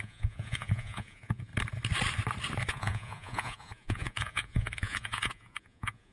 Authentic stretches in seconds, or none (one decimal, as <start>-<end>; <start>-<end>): 1.5-2.7